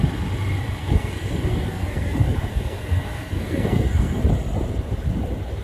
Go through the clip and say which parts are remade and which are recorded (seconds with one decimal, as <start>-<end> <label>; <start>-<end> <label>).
0.0-0.8 recorded; 0.8-4.2 remade; 4.2-5.6 recorded